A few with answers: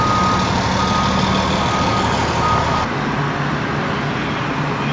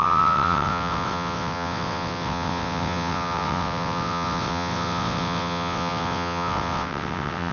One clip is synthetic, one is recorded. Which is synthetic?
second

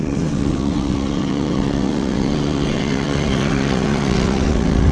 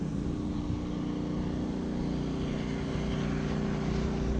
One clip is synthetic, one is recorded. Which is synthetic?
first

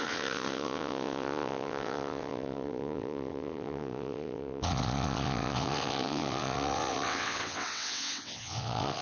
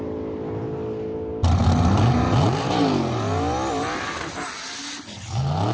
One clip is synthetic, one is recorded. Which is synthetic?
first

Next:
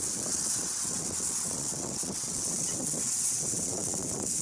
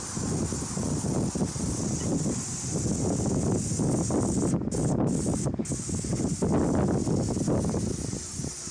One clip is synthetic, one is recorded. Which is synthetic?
first